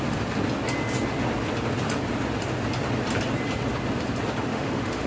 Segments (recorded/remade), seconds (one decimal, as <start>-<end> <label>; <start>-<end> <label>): 0.0-4.5 recorded; 4.5-5.1 remade